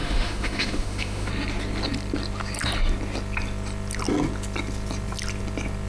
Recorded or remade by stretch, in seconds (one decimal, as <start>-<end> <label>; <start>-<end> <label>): 0.0-1.3 remade; 1.3-5.9 recorded